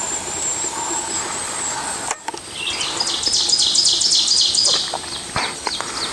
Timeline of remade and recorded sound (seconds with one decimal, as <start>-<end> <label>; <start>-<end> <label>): 0.0-6.1 recorded